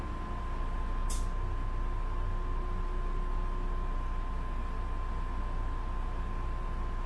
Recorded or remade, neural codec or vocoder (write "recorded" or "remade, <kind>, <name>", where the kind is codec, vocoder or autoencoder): recorded